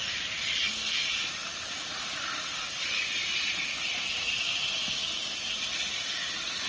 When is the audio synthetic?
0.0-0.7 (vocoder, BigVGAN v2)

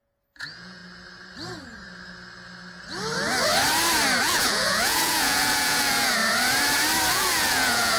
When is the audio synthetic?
0.0-0.8 (vocoder, Vocos); 4.2-6.2; 7.1-8.0

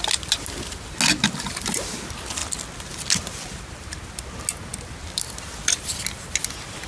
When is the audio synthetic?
none

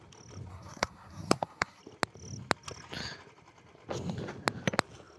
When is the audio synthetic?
0.5-1.8 (codec, SNAC)

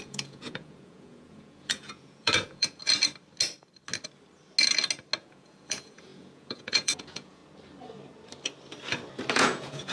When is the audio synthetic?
0.0-2.8 (vocoder, Vocos); 5.2-7.4; 9.3-9.9

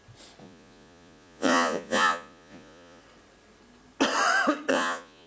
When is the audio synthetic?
0.4-3.0 (vocoder, Vocos); 4.7-5.3